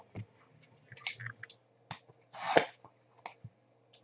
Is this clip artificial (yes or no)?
no